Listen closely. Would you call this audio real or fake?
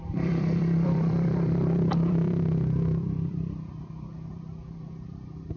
fake